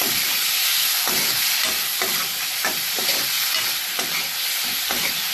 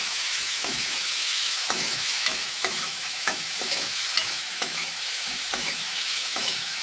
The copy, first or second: second